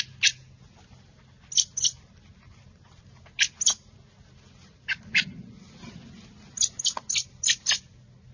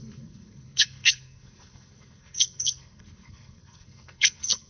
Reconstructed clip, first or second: second